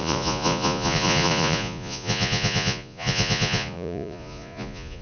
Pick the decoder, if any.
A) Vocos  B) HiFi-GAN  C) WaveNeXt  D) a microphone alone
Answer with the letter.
A